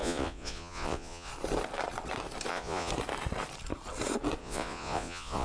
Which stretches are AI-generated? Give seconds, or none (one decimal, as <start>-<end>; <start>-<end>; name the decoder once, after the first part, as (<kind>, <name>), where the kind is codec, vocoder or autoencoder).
0.0-1.3 (vocoder, Vocos); 2.5-2.9; 4.4-5.4